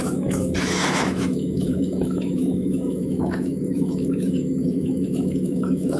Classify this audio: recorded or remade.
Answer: remade